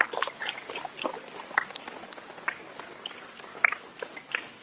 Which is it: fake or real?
real